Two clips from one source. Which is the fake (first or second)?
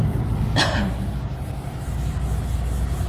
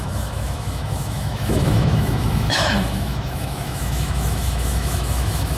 second